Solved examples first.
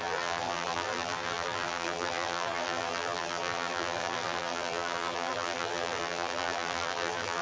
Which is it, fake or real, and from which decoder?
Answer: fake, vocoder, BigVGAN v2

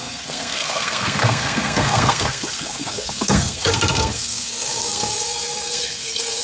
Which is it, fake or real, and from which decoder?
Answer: fake, codec, SNAC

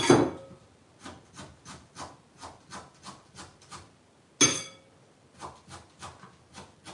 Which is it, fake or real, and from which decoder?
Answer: real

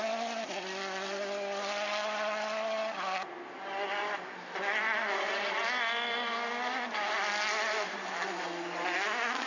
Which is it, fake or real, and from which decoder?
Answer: real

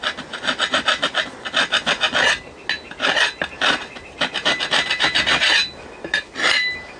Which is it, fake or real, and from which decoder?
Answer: real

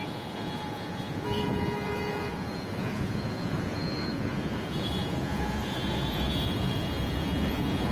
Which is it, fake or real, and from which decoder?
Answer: fake, vocoder, Vocos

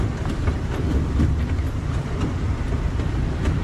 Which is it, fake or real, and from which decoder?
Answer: fake, vocoder, BigVGAN v2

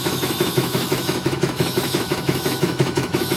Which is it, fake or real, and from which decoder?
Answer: fake, autoencoder, DAC-VAE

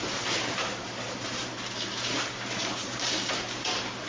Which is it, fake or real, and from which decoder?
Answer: fake, vocoder, BigVGAN v2